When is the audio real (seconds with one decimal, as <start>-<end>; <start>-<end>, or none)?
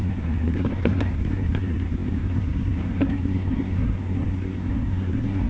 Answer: none